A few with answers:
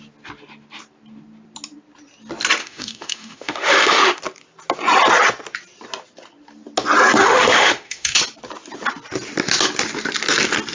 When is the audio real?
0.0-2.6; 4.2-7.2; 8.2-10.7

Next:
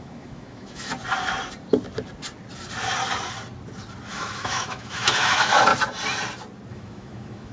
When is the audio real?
0.9-4.1; 5.7-6.7

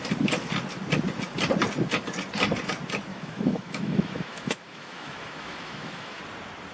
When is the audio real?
0.0-3.1; 6.2-6.7

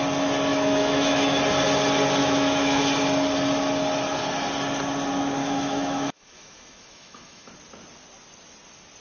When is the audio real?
0.0-0.5; 1.4-2.2; 2.8-5.4; 7.5-9.0

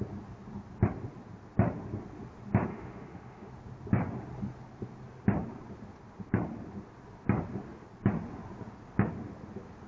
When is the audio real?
0.0-2.7; 3.5-9.9

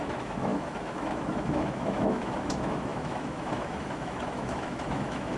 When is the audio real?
none